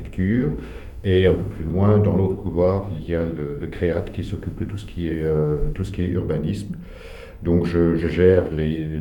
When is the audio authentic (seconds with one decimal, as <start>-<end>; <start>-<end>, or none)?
1.7-2.3; 6.1-8.0